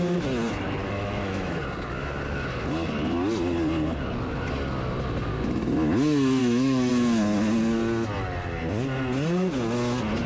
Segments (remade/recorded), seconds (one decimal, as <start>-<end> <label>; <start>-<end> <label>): 0.0-0.8 recorded; 0.8-1.6 remade; 1.6-6.4 recorded; 6.4-6.9 remade; 6.9-10.3 recorded